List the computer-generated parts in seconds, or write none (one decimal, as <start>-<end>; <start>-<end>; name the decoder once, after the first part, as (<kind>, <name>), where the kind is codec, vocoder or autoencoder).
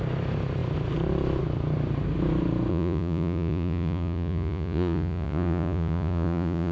2.7-6.7 (vocoder, Vocos)